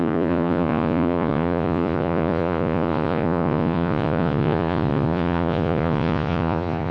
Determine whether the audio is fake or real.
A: fake